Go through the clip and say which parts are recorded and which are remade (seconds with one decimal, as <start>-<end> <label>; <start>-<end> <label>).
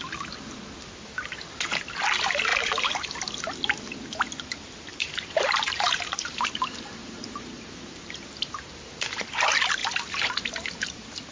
0.0-2.5 recorded; 2.5-3.5 remade; 3.5-4.9 recorded; 4.9-8.7 remade; 8.7-11.3 recorded